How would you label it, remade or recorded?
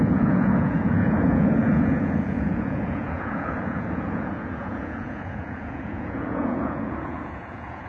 remade